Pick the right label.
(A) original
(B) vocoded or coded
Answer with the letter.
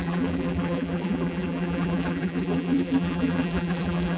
B